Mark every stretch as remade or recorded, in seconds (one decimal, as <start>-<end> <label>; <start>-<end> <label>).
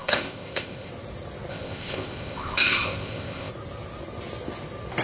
0.0-0.9 remade; 0.9-1.5 recorded; 1.5-3.5 remade; 3.5-5.0 recorded